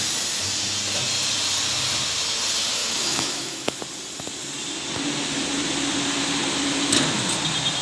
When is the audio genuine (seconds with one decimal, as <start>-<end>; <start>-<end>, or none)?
0.0-2.8; 3.8-7.8